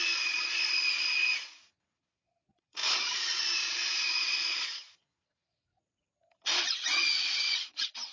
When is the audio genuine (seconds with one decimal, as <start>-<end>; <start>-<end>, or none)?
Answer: 5.7-6.5